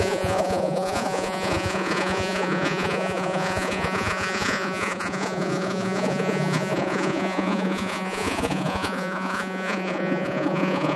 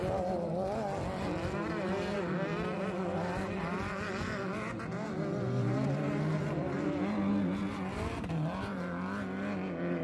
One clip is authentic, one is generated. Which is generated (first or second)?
first